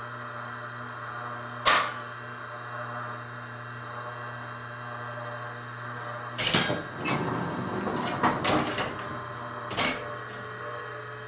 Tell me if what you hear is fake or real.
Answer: real